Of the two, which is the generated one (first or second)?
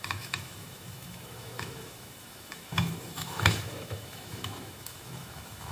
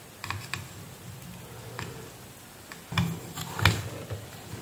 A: first